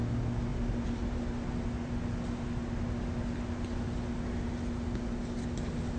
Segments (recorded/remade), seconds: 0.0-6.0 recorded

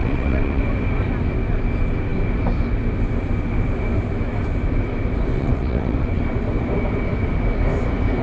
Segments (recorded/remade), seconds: 0.0-0.6 remade; 0.6-5.3 recorded; 5.3-6.2 remade; 6.2-8.2 recorded